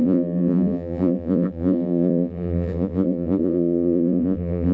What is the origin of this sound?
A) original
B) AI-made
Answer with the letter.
B